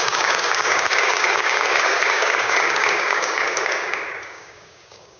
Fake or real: fake